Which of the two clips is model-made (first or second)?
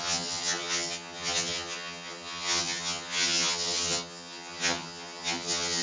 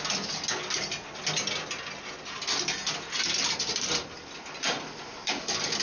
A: first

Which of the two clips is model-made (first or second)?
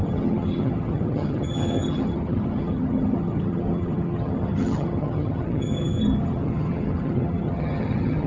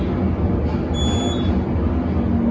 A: first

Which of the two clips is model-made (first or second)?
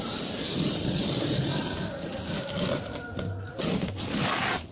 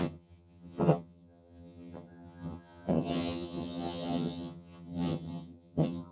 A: second